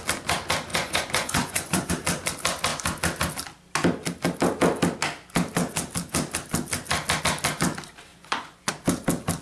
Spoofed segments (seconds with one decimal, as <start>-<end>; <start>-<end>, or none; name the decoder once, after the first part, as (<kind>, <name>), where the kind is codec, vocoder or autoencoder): 0.7-1.9 (vocoder, Vocos); 8.1-8.7